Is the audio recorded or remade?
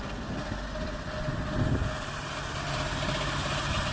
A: recorded